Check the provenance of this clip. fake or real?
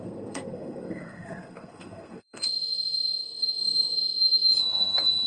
fake